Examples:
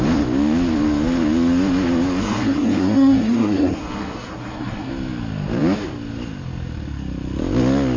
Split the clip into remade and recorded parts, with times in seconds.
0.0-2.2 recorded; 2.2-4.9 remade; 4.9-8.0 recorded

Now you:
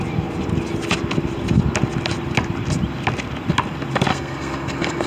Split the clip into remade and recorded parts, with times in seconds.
0.0-4.1 recorded; 4.1-5.1 remade